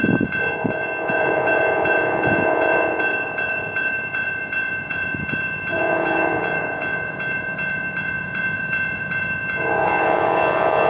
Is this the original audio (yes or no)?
no